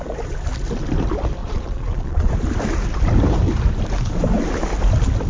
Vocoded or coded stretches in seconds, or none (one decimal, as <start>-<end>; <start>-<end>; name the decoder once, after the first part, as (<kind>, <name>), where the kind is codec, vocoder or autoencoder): 1.4-2.3 (vocoder, Vocos)